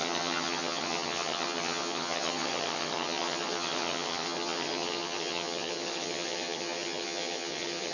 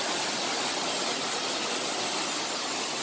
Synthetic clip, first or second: first